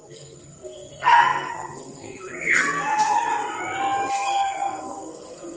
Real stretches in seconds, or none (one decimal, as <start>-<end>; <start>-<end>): 3.3-4.1